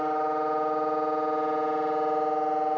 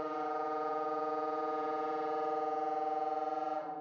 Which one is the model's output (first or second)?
second